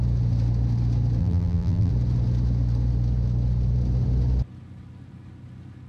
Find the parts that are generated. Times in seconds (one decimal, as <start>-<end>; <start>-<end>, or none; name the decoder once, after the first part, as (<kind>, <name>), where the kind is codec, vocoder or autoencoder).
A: 1.2-1.9 (vocoder, BigVGAN v2)